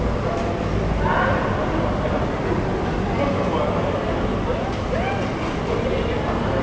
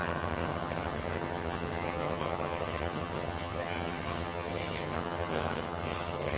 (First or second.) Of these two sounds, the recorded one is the first